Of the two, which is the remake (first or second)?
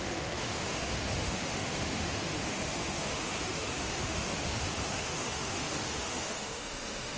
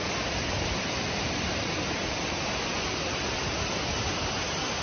first